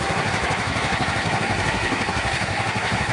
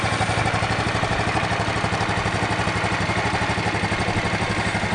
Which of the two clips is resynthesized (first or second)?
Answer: first